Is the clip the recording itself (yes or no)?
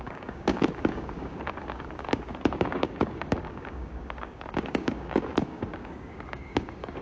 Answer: no